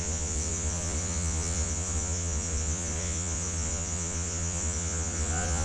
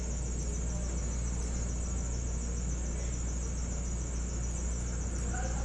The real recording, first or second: second